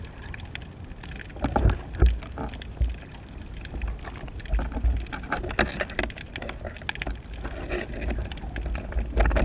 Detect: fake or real real